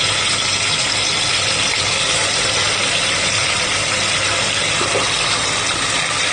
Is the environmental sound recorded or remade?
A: recorded